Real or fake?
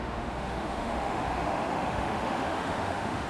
fake